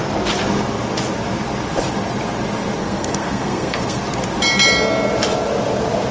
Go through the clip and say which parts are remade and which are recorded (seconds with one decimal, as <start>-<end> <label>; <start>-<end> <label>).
0.0-2.8 recorded; 2.8-4.0 remade; 4.0-6.1 recorded